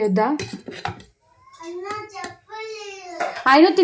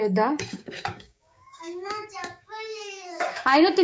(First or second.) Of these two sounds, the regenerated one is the second